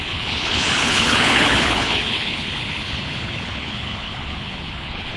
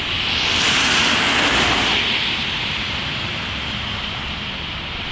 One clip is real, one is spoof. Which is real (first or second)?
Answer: second